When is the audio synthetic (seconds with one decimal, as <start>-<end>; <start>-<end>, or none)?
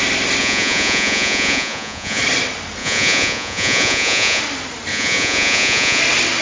0.4-2.2; 2.8-4.4; 4.9-6.0